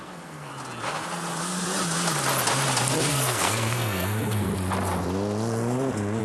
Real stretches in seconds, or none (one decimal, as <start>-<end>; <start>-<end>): 0.5-3.1; 4.5-6.2

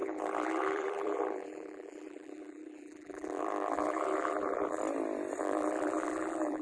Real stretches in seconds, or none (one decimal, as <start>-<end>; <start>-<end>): 4.8-5.4

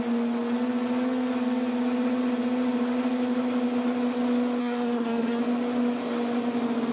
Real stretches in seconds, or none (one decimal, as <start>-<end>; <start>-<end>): 0.0-4.6; 5.4-6.9

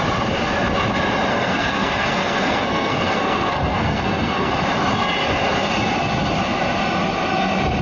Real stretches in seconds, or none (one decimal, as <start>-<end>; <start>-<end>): 0.0-1.3; 4.5-7.8

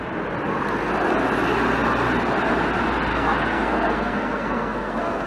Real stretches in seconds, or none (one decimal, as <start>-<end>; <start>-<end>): 0.0-3.1